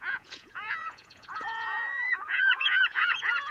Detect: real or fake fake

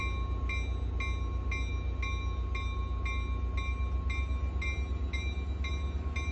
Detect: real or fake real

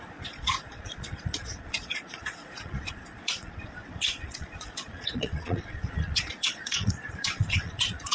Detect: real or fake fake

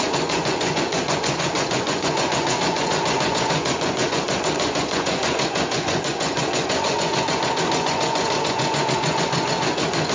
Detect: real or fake fake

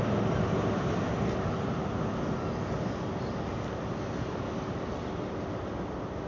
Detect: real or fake real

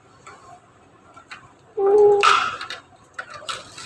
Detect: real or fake real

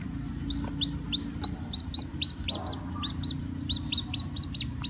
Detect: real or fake real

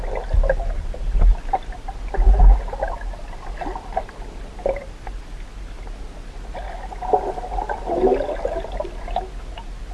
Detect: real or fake real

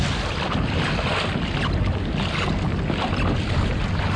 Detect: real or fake real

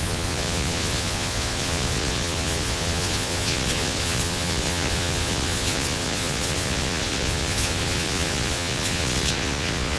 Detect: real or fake fake